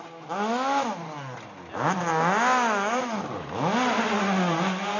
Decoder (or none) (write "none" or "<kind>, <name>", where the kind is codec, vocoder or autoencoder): none